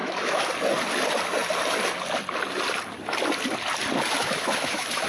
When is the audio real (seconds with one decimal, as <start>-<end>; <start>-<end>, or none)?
0.5-4.2